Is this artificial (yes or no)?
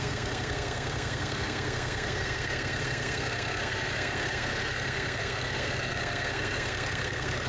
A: yes